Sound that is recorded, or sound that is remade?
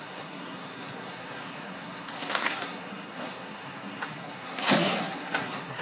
remade